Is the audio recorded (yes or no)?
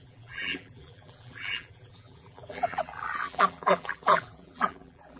no